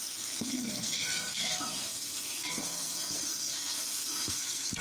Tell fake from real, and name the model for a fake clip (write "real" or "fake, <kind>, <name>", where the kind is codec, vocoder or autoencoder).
fake, codec, SNAC